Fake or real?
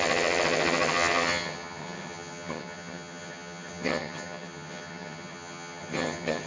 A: fake